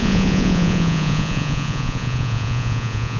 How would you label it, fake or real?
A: fake